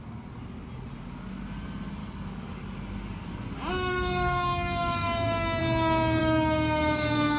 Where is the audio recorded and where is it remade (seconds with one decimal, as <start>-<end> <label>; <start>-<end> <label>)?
0.0-2.0 recorded; 2.0-2.6 remade; 2.6-3.7 recorded; 3.7-5.6 remade; 5.6-6.2 recorded; 6.2-7.4 remade